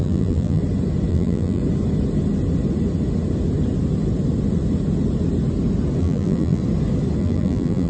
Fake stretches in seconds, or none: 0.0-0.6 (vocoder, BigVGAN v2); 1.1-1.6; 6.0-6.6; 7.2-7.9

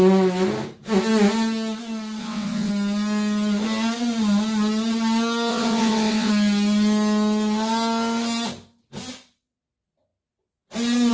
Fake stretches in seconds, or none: 2.2-2.7 (vocoder, WaveNeXt); 5.5-6.3

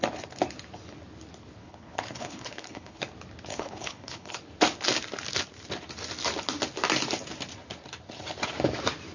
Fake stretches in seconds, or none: 1.6-3.0 (codec, HILCodec); 3.5-4.4

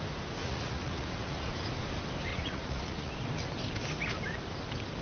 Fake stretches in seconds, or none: 0.4-1.5 (vocoder, Vocos); 2.3-3.1

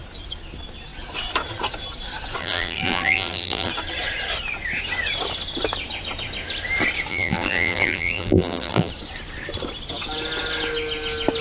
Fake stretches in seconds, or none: 2.4-3.7 (vocoder, BigVGAN v2); 7.1-8.9

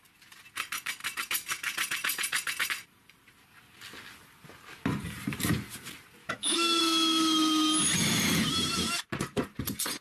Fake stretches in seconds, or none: 6.2-6.8 (autoencoder, DAC-VAE)

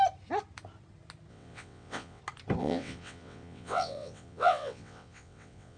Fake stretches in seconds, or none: 1.3-2.2 (vocoder, WaveNeXt); 2.6-5.8